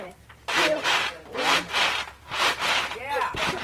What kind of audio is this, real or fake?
fake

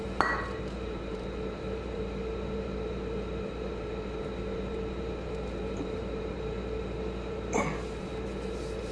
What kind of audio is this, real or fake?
fake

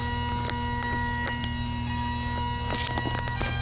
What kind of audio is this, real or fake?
real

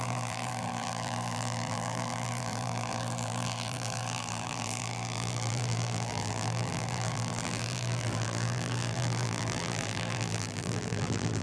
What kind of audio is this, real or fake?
fake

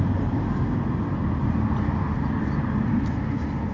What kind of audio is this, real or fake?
real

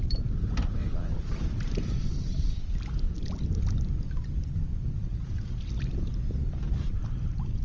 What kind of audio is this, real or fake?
fake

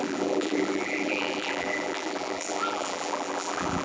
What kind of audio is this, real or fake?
fake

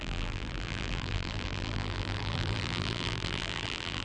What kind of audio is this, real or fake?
fake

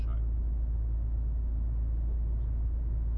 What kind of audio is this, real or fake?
real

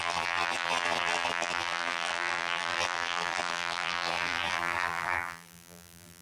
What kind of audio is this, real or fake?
fake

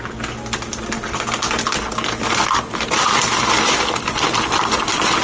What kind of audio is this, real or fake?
real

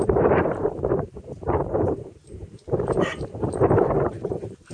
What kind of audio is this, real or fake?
fake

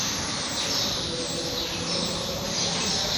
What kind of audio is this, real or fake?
real